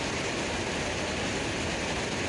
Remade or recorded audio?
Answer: recorded